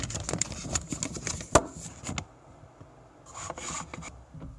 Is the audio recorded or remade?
recorded